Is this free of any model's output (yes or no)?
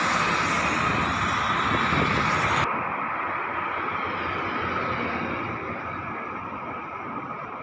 yes